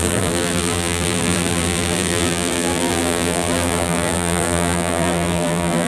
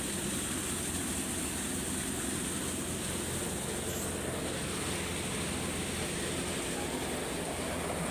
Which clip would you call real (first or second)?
second